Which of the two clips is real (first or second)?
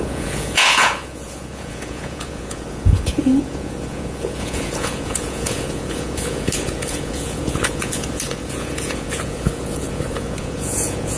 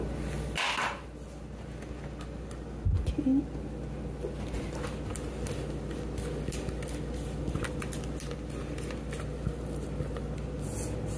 second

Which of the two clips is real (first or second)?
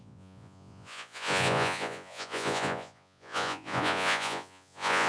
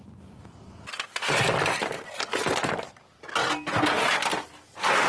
second